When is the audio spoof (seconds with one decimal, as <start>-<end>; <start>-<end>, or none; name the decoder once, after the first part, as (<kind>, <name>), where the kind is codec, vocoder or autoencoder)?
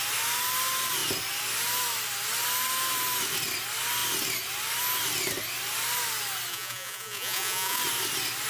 6.5-7.8 (vocoder, Vocos)